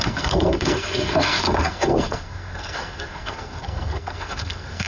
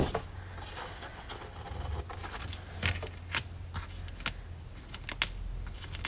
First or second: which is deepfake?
first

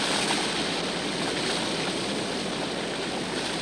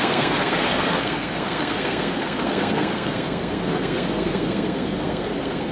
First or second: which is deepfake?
second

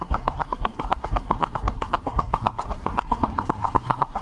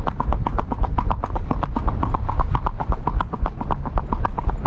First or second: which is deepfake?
first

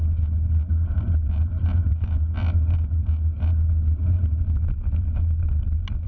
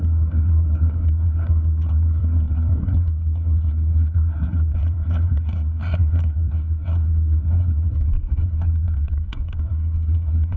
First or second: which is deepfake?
second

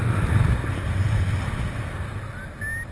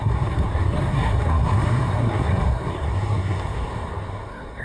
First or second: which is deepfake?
second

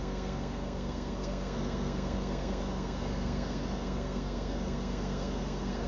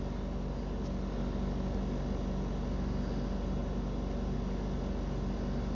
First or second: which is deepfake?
first